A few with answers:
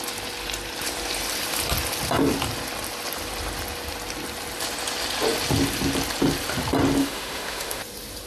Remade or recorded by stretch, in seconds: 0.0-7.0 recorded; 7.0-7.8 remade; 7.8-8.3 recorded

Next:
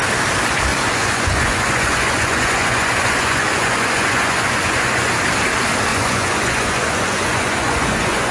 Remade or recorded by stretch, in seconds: 0.0-0.7 recorded; 0.7-5.1 remade; 5.1-5.9 recorded; 5.9-8.3 remade

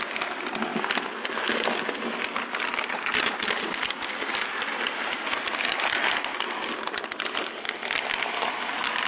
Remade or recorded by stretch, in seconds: 0.0-9.1 recorded